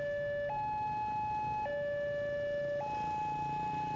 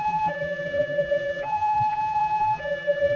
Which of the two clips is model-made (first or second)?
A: second